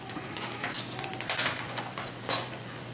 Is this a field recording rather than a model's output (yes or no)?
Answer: no